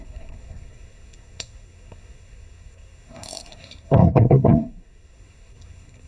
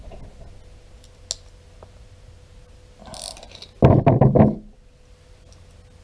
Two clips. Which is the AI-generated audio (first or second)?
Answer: first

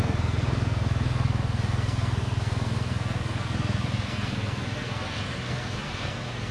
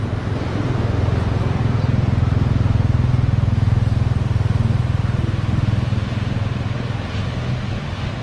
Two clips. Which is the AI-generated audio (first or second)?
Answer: first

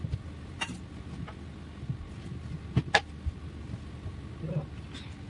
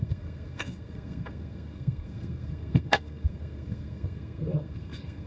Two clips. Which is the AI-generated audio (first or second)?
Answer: second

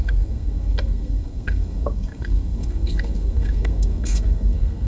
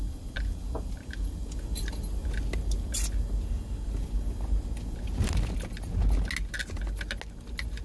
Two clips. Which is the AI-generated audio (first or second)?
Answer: first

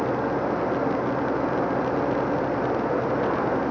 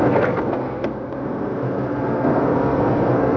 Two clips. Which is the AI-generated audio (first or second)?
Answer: second